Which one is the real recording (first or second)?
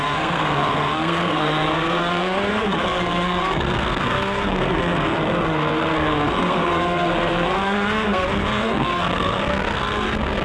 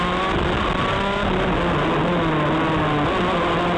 second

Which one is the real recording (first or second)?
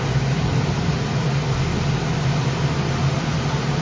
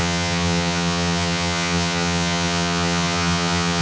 first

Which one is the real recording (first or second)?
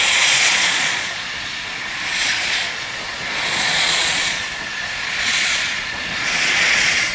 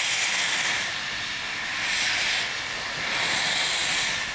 second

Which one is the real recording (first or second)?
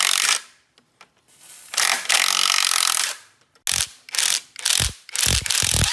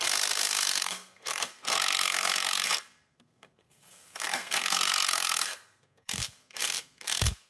first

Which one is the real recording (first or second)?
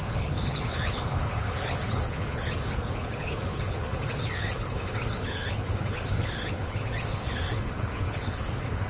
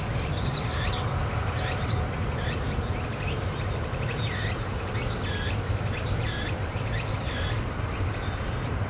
second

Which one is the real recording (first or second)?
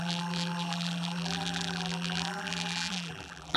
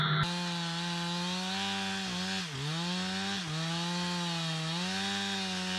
second